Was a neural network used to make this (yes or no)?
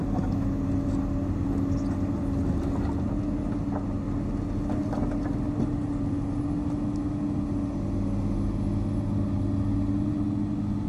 no